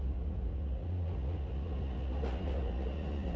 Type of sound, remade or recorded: remade